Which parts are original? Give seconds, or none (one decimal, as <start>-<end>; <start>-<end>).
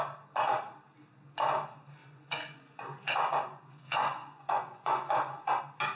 0.0-2.0; 5.6-6.0